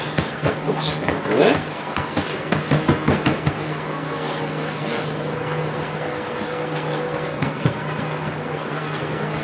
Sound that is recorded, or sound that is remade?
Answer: remade